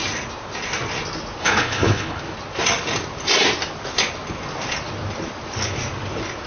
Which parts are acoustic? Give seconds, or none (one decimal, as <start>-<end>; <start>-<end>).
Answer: 0.0-1.4; 2.2-6.5